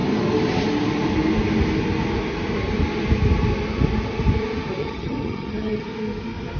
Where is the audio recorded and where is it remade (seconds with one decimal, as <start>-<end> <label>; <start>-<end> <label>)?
0.0-4.8 recorded; 4.8-5.8 remade; 5.8-6.6 recorded